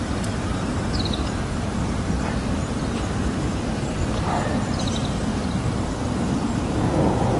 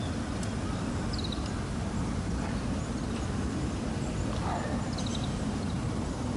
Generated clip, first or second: first